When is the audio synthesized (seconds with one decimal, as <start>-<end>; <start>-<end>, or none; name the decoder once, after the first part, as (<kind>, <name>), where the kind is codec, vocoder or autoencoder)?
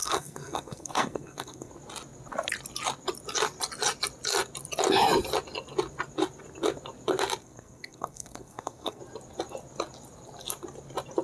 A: 0.0-1.7 (codec, SNAC); 7.4-9.0